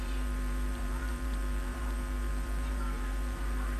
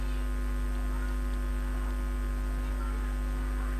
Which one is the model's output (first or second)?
first